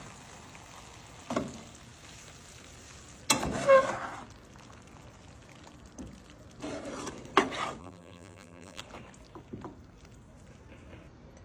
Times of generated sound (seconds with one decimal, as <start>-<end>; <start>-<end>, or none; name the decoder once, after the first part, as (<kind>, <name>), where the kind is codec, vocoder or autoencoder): 7.8-8.8 (vocoder, BigVGAN v2)

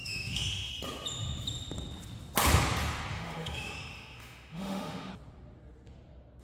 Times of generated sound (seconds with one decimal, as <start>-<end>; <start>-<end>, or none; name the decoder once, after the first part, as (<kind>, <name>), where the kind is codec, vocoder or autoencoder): 0.0-0.7 (autoencoder, DAC-VAE); 3.1-5.1

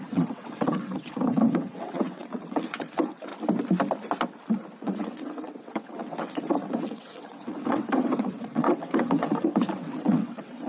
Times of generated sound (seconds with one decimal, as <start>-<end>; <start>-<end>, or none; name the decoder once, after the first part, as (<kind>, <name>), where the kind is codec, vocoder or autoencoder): 0.0-3.3 (vocoder, WaveNeXt); 4.8-10.7